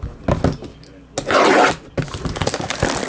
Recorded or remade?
recorded